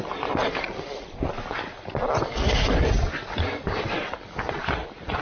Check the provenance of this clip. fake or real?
real